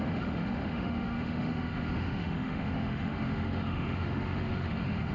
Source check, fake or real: fake